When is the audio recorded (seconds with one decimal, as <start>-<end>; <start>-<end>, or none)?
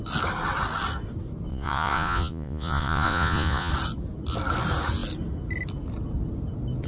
0.0-1.5; 3.7-6.9